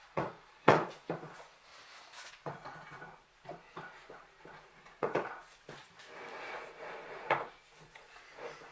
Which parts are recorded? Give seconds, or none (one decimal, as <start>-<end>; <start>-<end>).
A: 1.7-2.3; 5.8-6.4